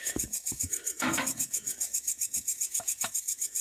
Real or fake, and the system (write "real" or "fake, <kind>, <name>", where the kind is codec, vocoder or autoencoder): fake, autoencoder, DAC-VAE